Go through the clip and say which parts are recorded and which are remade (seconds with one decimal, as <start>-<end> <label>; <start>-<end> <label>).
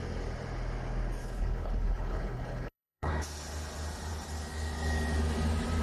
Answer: 0.0-1.2 recorded; 1.2-3.1 remade; 3.1-5.8 recorded